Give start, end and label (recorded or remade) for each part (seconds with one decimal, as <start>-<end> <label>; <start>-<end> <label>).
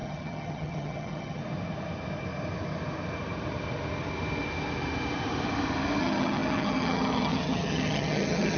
0.0-1.4 remade; 1.4-6.0 recorded; 6.0-8.6 remade